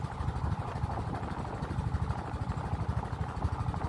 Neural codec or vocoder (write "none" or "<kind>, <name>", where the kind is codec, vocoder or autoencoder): none